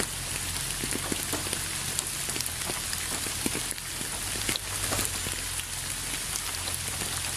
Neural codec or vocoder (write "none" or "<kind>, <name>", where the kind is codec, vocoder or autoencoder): none